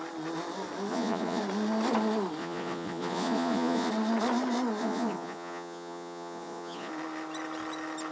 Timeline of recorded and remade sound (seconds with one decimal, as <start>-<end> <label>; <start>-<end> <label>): 0.0-0.9 recorded; 0.9-1.4 remade; 1.4-2.4 recorded; 2.4-3.9 remade; 3.9-4.8 recorded; 4.8-6.9 remade; 6.9-8.1 recorded